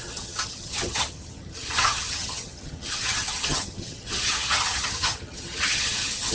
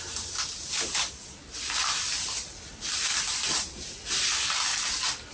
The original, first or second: second